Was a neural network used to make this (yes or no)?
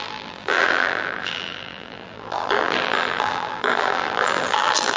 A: yes